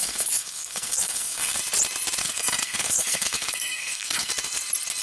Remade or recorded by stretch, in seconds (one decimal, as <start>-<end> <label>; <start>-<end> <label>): 0.0-1.6 remade; 1.6-2.2 recorded; 2.2-4.3 remade; 4.3-5.0 recorded